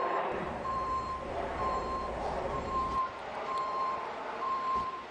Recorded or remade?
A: remade